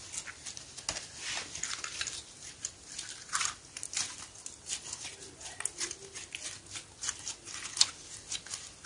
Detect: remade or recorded recorded